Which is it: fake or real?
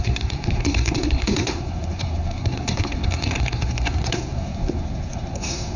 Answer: fake